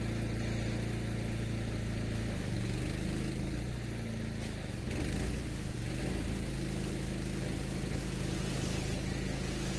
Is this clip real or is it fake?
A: real